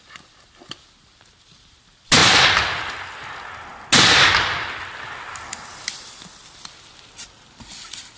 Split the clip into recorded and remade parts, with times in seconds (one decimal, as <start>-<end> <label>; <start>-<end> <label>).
0.0-8.2 recorded